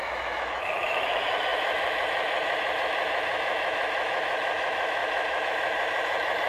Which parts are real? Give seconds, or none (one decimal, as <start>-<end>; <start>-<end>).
none